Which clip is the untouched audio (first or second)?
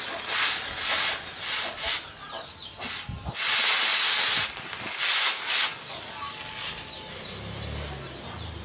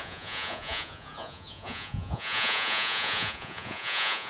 first